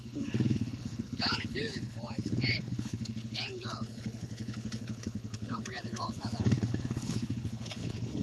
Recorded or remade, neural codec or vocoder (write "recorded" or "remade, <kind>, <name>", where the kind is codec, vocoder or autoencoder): remade, codec, HILCodec